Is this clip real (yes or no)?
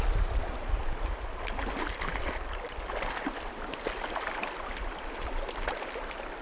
yes